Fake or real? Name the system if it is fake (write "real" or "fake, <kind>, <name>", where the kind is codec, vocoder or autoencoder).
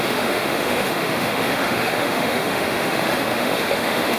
fake, autoencoder, DAC-VAE